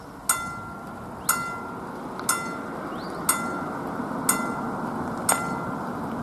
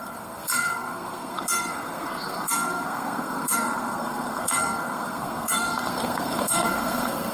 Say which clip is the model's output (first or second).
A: second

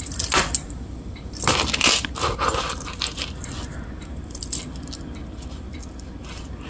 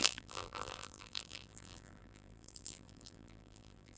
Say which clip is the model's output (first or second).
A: second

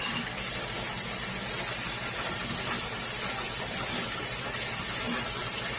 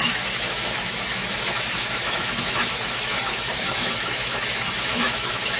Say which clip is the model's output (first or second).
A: second